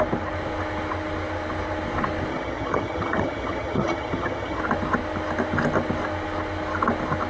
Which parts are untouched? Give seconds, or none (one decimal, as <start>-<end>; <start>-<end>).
0.0-2.3; 4.6-7.3